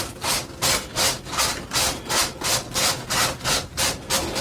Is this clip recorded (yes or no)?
yes